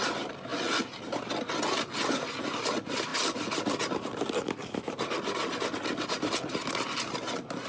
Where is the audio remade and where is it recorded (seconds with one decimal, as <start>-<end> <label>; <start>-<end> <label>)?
0.0-7.7 recorded